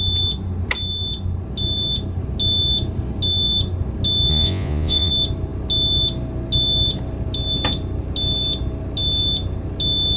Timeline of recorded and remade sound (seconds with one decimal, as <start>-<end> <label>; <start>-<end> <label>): 0.0-4.3 recorded; 4.3-5.1 remade; 5.1-10.2 recorded